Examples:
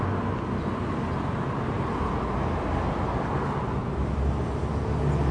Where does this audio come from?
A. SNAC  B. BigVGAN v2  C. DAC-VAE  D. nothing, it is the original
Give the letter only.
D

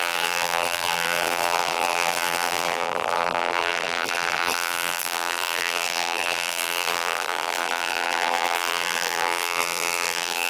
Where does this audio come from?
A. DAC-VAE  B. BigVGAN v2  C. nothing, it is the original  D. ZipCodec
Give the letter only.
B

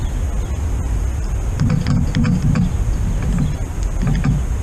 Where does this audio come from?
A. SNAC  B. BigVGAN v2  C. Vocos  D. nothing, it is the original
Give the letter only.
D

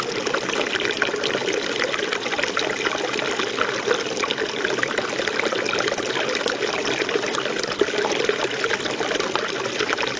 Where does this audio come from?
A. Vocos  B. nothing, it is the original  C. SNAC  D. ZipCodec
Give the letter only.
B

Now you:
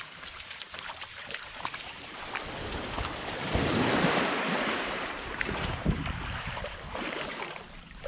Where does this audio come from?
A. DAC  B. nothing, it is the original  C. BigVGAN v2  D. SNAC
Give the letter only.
C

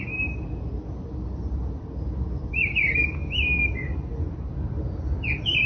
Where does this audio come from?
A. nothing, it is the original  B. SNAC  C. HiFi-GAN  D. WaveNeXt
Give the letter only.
A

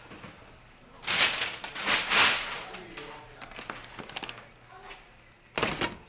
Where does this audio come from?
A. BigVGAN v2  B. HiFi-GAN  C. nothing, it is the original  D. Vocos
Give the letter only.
C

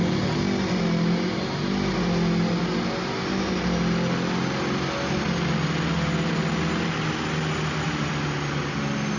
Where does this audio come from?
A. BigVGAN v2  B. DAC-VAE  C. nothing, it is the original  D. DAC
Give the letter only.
C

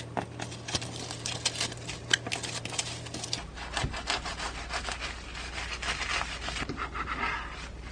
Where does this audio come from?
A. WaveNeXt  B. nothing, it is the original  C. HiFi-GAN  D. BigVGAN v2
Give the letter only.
B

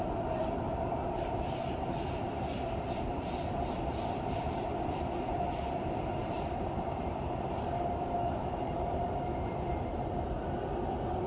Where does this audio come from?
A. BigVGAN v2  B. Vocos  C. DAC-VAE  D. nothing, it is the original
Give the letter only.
A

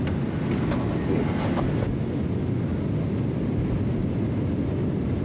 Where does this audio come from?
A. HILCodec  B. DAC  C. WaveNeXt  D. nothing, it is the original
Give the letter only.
D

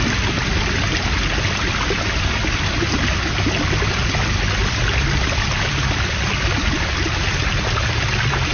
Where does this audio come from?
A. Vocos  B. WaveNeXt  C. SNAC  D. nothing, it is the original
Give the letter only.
D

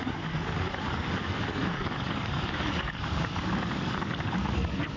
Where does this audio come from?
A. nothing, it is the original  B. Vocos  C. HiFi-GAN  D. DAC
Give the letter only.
D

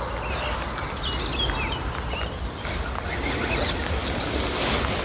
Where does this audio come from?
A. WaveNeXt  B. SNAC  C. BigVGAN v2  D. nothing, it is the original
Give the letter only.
D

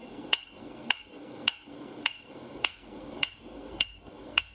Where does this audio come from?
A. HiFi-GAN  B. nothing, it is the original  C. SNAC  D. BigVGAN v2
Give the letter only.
C